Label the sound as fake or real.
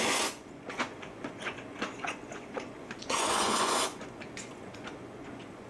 fake